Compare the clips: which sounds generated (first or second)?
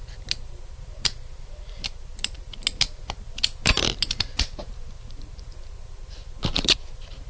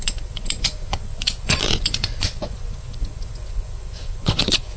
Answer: second